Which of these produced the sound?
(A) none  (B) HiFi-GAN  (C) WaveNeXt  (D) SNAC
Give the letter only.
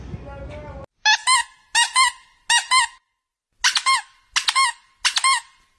A